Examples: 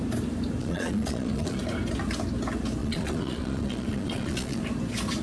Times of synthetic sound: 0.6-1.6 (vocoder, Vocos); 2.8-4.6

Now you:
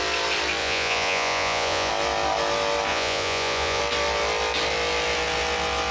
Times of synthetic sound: 0.6-1.9 (vocoder, Vocos); 2.9-3.8